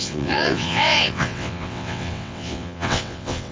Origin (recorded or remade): remade